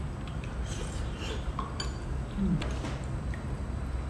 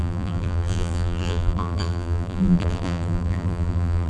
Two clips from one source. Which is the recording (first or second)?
first